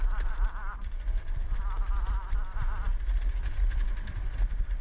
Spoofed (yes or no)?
yes